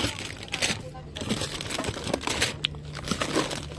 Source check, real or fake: real